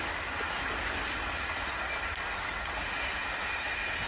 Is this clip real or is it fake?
real